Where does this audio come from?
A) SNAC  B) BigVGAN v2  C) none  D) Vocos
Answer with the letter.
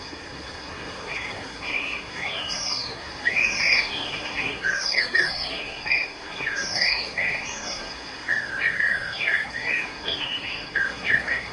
A